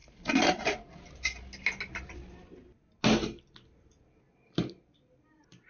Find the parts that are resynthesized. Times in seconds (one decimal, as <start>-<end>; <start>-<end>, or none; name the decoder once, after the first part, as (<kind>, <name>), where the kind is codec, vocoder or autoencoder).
none